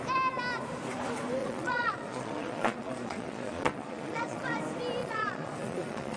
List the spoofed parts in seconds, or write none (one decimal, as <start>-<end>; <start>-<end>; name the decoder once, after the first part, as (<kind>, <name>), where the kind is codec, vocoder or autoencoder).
1.4-4.6 (vocoder, Vocos); 5.0-6.2